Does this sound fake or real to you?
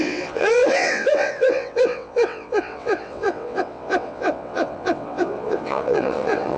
fake